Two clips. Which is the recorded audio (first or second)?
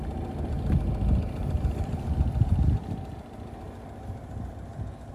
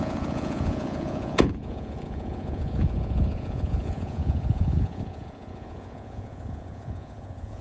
first